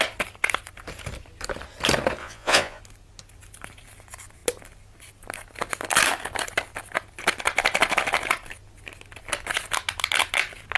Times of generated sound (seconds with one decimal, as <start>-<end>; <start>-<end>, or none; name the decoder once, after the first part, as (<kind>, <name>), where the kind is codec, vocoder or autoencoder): 2.2-2.8 (vocoder, Vocos)